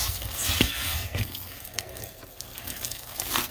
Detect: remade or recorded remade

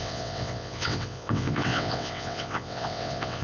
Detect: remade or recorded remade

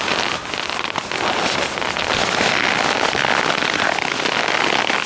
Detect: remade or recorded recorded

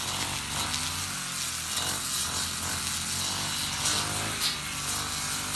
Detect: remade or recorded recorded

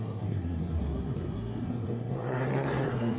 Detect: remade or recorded remade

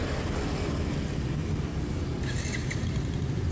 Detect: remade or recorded remade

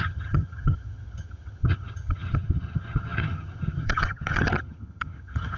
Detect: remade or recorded remade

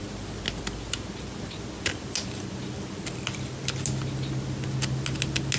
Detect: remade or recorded recorded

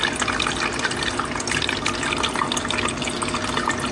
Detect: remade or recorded recorded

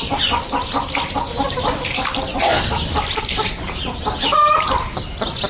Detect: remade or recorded recorded